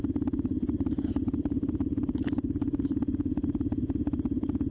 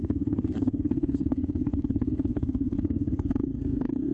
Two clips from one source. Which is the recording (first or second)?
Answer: first